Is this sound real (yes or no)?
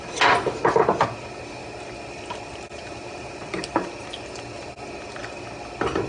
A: yes